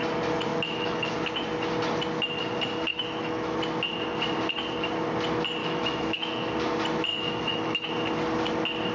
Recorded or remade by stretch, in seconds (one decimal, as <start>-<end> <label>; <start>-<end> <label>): 0.0-0.5 recorded; 0.5-1.1 remade; 1.1-2.9 recorded; 2.9-3.6 remade; 3.6-5.6 recorded; 5.6-6.5 remade; 6.5-7.1 recorded; 7.1-7.9 remade; 7.9-8.9 recorded